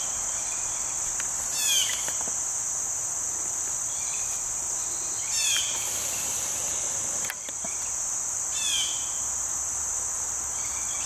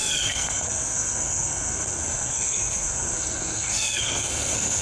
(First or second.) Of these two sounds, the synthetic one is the second